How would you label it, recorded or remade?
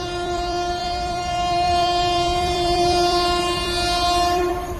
remade